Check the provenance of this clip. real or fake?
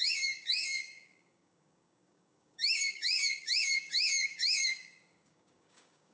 fake